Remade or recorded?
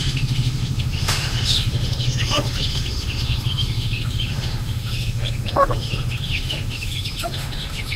remade